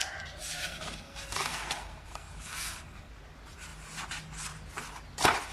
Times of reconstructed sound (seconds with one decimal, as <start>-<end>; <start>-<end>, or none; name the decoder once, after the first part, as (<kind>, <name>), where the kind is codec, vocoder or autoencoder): 0.4-3.1 (codec, SNAC)